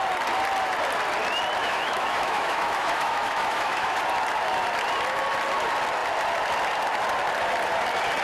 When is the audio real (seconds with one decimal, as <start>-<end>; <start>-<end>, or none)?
0.0-1.6; 4.0-8.2